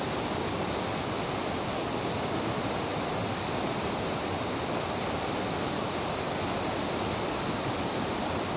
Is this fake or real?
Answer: real